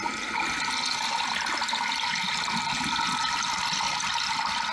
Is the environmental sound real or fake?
real